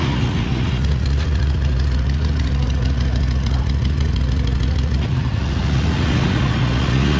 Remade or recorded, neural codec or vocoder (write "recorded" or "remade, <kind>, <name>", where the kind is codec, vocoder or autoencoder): remade, vocoder, Vocos